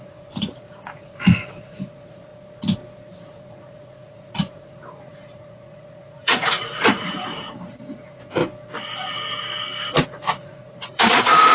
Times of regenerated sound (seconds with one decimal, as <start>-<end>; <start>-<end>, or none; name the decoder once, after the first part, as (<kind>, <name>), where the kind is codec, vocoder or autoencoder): 0.0-2.3 (vocoder, Vocos); 3.1-8.4; 10.0-11.5